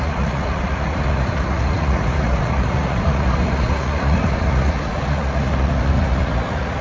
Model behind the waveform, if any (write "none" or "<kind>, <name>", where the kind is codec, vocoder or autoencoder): vocoder, Vocos